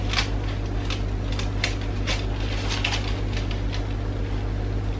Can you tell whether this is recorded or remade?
recorded